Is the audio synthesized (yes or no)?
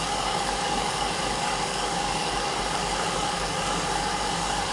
yes